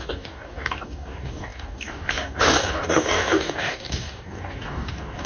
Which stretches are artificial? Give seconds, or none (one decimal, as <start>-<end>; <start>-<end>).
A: 0.0-5.3